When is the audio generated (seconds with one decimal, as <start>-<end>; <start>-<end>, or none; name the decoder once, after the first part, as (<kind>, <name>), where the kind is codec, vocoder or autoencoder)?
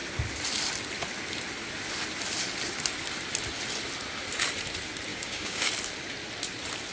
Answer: 5.1-5.7 (codec, DAC)